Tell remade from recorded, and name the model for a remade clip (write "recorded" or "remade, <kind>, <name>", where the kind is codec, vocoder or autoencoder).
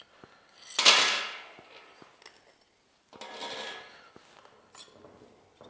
recorded